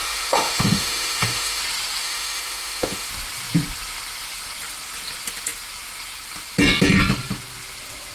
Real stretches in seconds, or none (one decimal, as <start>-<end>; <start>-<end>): 1.6-2.0; 3.1-8.1